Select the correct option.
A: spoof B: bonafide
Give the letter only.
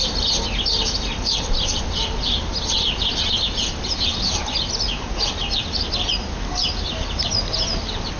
B